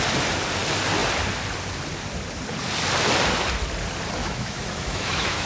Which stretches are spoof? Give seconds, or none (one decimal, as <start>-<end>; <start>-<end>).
4.2-5.5